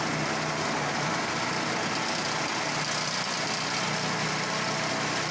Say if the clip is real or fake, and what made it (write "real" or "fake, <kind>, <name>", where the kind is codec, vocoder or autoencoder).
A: real